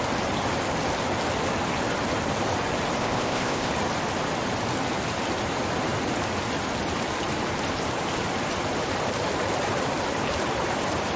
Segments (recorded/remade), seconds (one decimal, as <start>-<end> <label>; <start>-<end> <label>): 0.0-3.0 recorded; 3.0-3.7 remade; 3.7-11.2 recorded